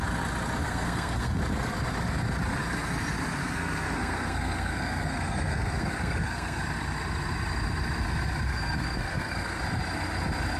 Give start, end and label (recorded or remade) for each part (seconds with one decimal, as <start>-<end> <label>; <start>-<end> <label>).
0.0-0.6 recorded; 0.6-1.4 remade; 1.4-3.4 recorded; 3.4-6.6 remade; 6.6-8.5 recorded; 8.5-9.6 remade; 9.6-10.6 recorded